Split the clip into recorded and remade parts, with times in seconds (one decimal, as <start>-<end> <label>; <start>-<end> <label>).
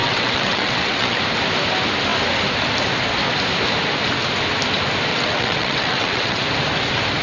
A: 0.0-1.2 remade; 1.2-5.1 recorded; 5.1-6.4 remade; 6.4-7.2 recorded